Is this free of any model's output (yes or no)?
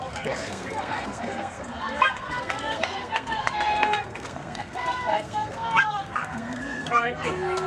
no